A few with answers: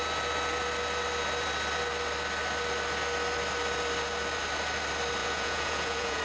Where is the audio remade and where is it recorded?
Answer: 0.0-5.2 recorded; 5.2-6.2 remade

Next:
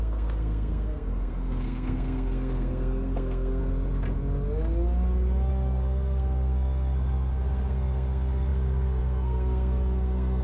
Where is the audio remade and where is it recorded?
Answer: 0.0-3.6 remade; 3.6-5.5 recorded; 5.5-10.4 remade

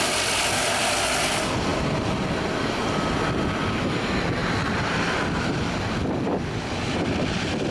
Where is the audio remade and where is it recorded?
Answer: 0.0-7.7 recorded

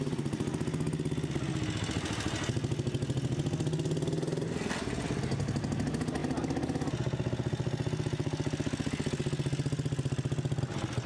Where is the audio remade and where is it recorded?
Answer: 0.0-11.1 recorded

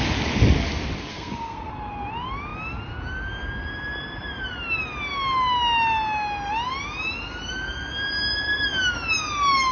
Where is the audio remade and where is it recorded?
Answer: 0.0-1.1 recorded; 1.1-1.7 remade; 1.7-9.7 recorded

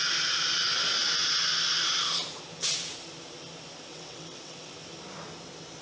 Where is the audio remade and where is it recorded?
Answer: 0.0-3.9 recorded; 3.9-4.7 remade; 4.7-5.8 recorded